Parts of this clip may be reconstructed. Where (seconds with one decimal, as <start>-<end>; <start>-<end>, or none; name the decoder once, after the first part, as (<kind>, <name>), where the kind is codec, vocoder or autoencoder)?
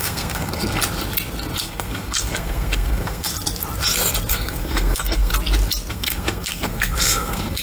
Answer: 0.0-0.8 (codec, SNAC); 1.6-3.3; 4.3-5.3; 5.9-7.6